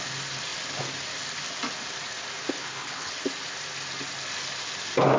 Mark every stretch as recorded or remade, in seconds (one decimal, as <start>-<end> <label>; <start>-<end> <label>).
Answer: 0.0-2.6 recorded; 2.6-3.1 remade; 3.1-5.2 recorded